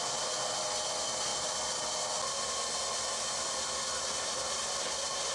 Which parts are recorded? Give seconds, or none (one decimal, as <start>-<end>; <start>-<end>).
0.0-5.3